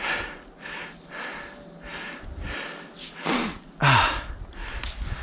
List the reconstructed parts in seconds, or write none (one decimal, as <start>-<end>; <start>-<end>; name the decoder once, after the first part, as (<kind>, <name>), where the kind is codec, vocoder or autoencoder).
none